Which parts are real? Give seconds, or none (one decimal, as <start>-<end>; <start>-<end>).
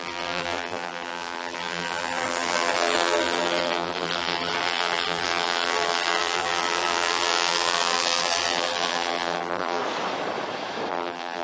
9.8-10.9